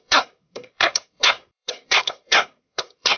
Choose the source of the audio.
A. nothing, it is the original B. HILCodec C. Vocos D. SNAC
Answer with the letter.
D